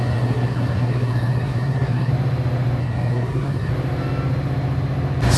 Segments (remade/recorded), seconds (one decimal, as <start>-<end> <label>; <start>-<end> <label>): 0.0-2.1 remade; 2.1-2.8 recorded; 2.8-3.7 remade; 3.7-5.4 recorded